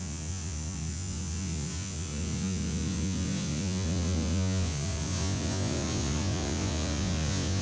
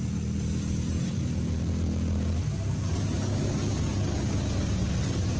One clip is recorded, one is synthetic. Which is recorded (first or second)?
second